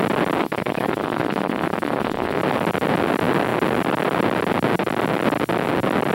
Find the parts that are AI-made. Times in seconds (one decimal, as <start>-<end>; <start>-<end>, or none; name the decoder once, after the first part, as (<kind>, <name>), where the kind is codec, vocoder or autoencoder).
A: 0.4-2.4 (codec, SNAC)